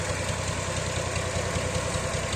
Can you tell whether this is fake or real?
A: real